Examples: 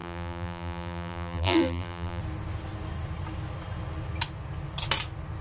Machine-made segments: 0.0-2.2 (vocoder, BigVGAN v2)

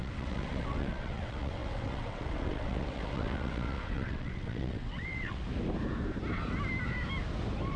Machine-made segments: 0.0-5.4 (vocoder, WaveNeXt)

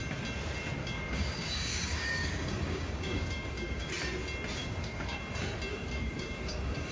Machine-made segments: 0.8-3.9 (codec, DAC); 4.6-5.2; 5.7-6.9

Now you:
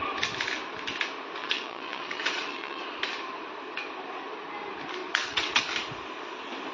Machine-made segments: 1.4-2.8 (vocoder, WaveNeXt); 5.0-5.6

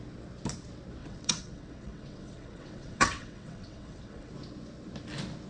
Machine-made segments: 1.0-4.3 (vocoder, WaveNeXt)

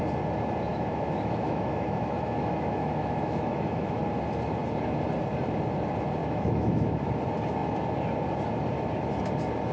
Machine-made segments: 0.7-4.0 (autoencoder, DAC-VAE); 6.2-7.1